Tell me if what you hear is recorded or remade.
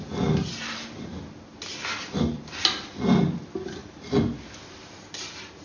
recorded